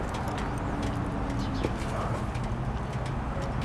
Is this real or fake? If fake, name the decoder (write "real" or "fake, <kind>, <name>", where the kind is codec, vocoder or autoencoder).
real